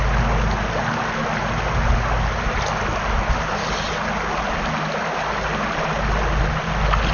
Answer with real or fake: real